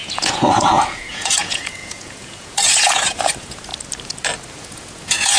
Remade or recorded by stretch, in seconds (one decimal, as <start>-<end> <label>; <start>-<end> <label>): 0.0-3.7 remade; 3.7-4.5 recorded; 4.5-5.4 remade